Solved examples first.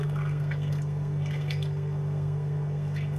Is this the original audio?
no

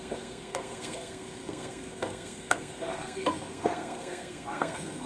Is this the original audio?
no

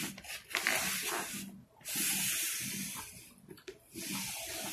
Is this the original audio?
yes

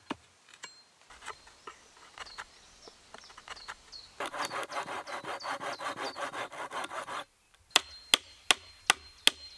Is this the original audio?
yes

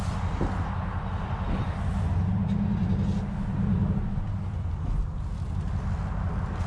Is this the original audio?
yes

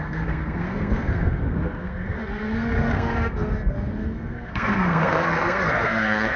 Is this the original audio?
no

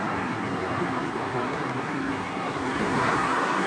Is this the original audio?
no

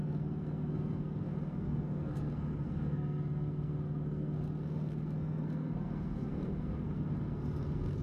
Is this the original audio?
no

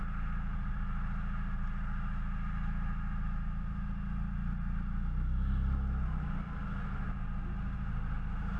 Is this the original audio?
yes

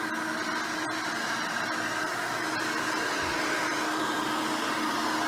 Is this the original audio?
yes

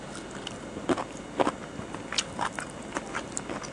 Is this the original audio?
yes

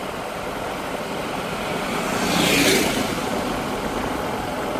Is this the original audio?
yes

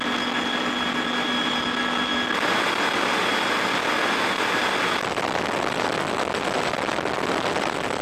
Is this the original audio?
yes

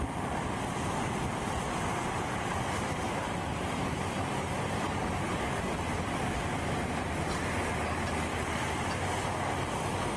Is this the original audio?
yes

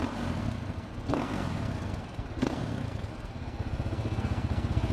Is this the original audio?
no